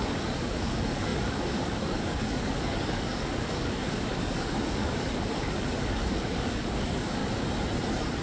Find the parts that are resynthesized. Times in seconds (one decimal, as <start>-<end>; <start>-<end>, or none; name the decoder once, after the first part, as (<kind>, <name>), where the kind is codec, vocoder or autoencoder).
0.0-7.2 (codec, DAC)